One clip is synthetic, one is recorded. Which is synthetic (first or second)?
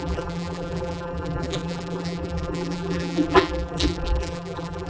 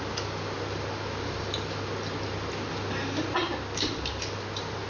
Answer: first